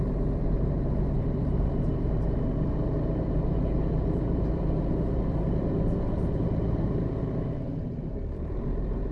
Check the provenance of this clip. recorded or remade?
remade